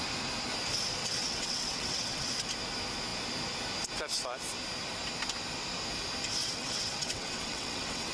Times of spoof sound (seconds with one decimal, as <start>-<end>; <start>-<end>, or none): 1.0-2.3; 6.4-8.1